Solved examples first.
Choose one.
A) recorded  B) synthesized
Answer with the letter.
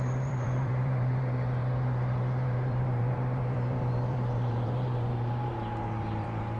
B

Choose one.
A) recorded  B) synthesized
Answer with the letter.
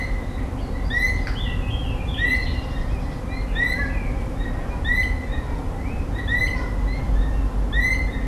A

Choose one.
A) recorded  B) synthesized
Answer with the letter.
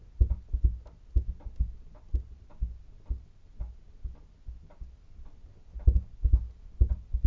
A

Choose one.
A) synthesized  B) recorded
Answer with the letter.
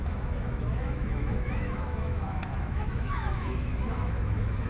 A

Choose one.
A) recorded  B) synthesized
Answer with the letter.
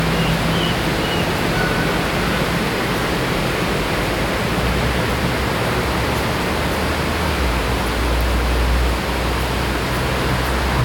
A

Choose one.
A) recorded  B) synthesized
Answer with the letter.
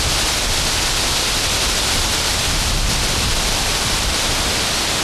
A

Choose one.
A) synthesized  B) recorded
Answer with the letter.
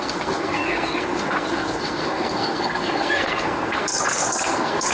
A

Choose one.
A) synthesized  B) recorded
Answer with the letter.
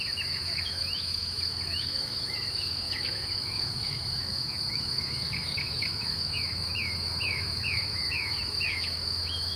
A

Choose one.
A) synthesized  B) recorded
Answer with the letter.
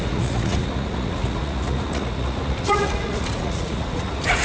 A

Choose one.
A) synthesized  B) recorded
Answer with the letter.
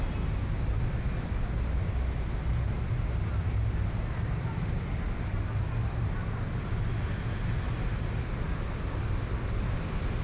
B